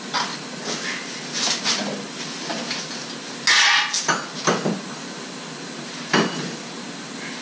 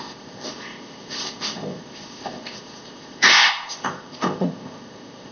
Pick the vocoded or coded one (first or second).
second